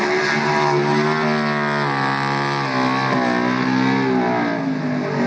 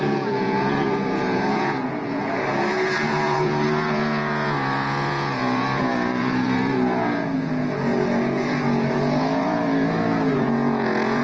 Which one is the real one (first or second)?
first